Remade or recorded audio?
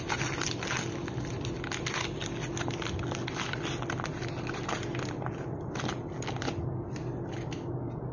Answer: recorded